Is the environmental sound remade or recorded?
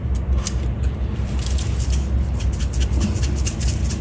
recorded